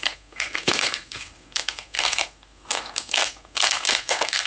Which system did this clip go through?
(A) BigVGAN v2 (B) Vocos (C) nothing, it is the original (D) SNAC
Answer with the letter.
D